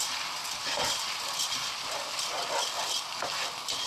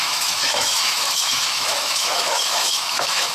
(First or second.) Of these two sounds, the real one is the first